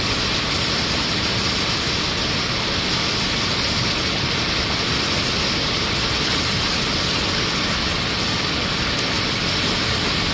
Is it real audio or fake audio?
real